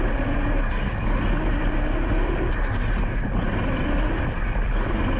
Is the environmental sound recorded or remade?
recorded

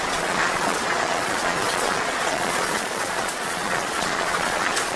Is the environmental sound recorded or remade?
remade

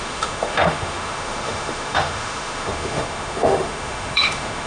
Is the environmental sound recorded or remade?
remade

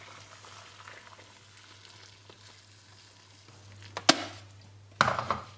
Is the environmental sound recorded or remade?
recorded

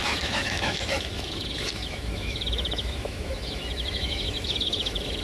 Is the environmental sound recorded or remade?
remade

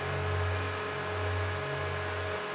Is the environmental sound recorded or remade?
recorded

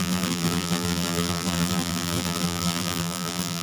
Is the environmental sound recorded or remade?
remade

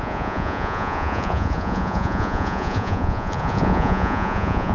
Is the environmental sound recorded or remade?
remade